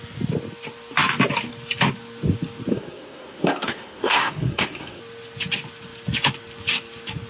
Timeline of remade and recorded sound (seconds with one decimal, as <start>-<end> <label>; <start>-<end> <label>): 0.0-2.7 recorded; 2.7-5.0 remade; 5.0-7.3 recorded